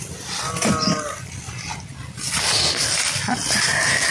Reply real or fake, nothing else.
real